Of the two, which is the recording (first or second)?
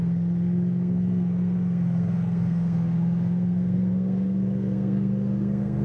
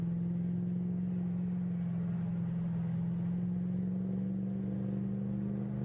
second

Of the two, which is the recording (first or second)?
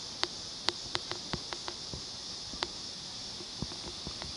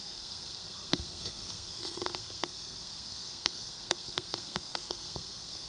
first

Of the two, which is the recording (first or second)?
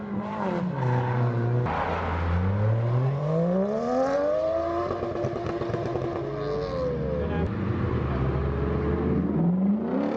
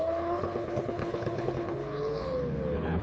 first